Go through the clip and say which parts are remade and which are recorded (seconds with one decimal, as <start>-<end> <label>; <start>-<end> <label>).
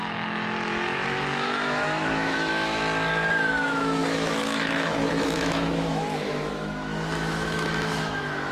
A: 0.0-2.8 remade; 2.8-3.3 recorded; 3.3-8.5 remade